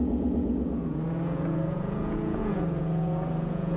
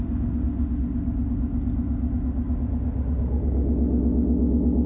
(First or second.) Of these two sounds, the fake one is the first